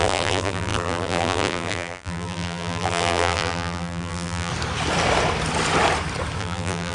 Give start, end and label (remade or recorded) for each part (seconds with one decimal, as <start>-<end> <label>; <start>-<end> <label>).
0.0-4.5 remade; 4.5-6.4 recorded; 6.4-6.9 remade